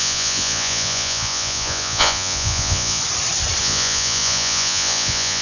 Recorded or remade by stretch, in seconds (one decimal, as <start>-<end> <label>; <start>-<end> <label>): 0.0-3.0 remade; 3.0-3.6 recorded; 3.6-5.4 remade